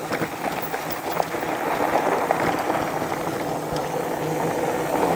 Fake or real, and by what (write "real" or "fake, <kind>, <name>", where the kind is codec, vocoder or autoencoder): real